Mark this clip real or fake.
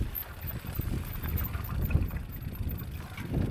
real